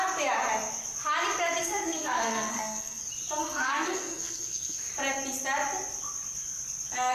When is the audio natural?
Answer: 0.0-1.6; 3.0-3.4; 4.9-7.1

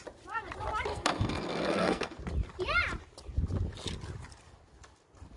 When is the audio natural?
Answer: 0.0-0.9; 2.2-5.4

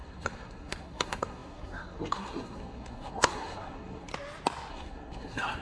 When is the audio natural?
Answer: 4.1-4.7

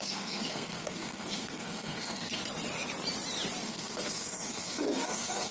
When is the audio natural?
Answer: 2.4-3.6